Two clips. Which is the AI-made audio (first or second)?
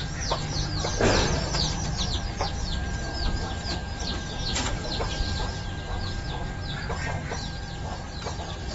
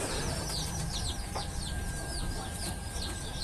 second